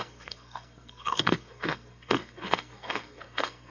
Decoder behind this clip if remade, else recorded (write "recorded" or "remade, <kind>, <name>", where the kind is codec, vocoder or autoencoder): remade, codec, SNAC